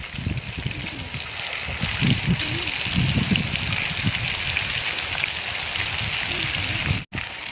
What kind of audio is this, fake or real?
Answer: real